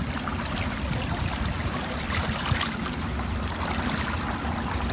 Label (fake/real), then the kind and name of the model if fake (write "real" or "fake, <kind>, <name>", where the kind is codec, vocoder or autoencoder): real